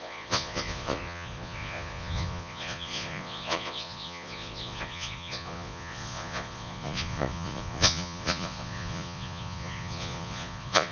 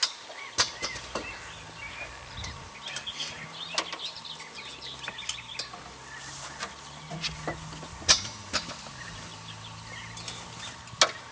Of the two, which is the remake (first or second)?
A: first